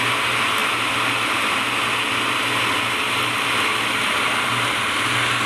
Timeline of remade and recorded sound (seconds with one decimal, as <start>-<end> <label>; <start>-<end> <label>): 0.0-5.5 recorded